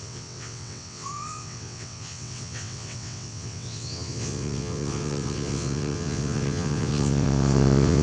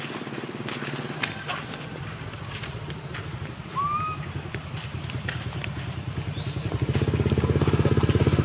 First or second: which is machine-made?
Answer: first